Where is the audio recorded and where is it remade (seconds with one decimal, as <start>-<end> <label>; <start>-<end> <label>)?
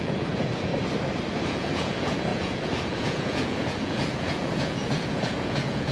0.0-0.7 remade; 0.7-1.4 recorded; 1.4-5.9 remade